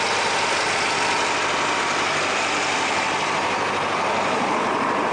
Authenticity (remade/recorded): recorded